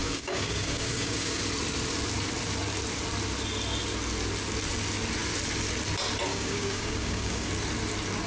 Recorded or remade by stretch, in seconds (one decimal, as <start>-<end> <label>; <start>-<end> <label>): 0.0-1.4 remade; 1.4-6.3 recorded; 6.3-7.5 remade; 7.5-8.3 recorded